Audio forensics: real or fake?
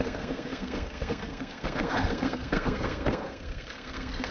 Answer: fake